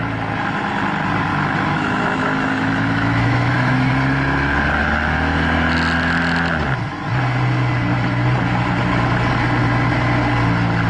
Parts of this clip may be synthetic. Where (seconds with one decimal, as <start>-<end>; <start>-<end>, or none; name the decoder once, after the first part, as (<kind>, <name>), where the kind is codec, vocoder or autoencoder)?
1.3-3.9 (autoencoder, DAC-VAE)

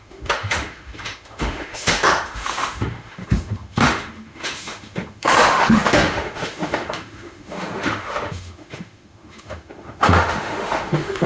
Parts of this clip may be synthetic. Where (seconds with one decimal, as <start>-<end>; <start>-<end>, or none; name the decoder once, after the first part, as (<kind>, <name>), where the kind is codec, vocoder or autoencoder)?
0.0-11.3 (autoencoder, DAC-VAE)

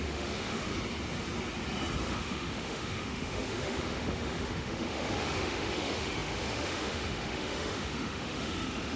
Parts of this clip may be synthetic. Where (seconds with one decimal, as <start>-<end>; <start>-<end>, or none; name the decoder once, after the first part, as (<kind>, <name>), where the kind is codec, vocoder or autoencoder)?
0.0-0.7 (autoencoder, DAC-VAE); 2.0-9.0

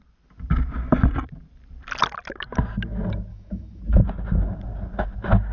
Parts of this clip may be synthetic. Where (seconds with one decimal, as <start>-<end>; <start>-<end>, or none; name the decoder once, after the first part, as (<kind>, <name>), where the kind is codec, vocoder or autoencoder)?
3.3-3.8 (autoencoder, DAC-VAE)

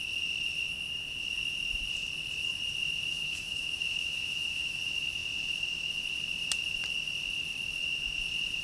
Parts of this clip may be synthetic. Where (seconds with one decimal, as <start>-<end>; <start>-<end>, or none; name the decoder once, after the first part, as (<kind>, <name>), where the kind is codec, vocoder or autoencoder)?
3.1-4.8 (autoencoder, DAC-VAE)

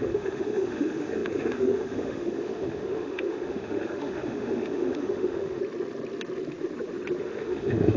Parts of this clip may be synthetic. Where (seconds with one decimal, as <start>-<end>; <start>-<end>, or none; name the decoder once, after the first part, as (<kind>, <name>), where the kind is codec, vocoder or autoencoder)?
0.0-5.6 (autoencoder, DAC-VAE); 7.2-8.0

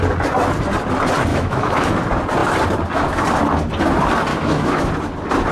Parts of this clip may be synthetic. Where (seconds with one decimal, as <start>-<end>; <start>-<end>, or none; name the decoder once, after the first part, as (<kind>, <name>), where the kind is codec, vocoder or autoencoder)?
1.3-1.9 (autoencoder, DAC-VAE); 4.3-4.9